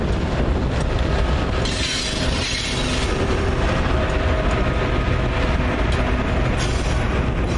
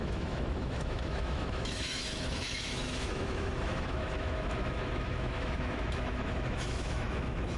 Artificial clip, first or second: second